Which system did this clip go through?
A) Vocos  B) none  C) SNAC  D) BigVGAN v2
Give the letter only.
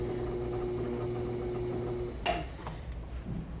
B